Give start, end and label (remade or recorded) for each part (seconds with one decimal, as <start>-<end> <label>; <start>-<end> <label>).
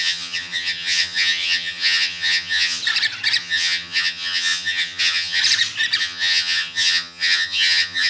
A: 0.0-2.8 remade; 2.8-3.4 recorded; 3.4-5.4 remade; 5.4-6.0 recorded; 6.0-8.1 remade